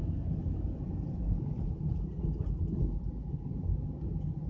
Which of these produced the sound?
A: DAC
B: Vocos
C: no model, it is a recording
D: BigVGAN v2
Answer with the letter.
C